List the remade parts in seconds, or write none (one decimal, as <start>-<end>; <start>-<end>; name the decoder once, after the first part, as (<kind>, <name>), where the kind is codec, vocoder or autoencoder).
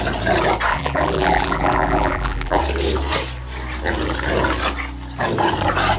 0.7-2.6 (vocoder, BigVGAN v2)